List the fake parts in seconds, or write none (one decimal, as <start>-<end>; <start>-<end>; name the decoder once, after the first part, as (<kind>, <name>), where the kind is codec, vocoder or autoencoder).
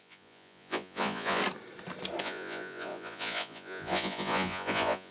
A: 0.0-1.4 (vocoder, Vocos); 2.2-5.1